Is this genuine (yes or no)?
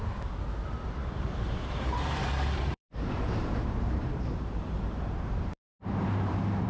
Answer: no